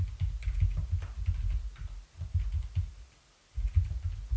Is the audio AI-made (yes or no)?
no